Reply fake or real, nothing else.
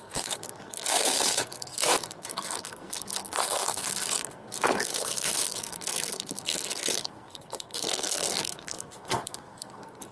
fake